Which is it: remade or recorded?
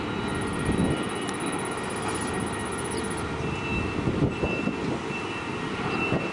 recorded